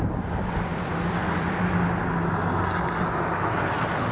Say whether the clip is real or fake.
real